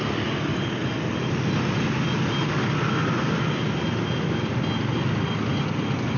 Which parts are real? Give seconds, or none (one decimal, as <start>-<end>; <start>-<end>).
0.0-6.2